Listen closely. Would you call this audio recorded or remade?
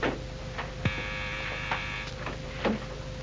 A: recorded